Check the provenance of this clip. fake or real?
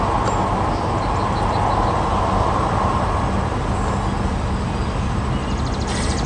real